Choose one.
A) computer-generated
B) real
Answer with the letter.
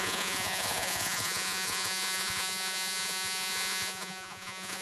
A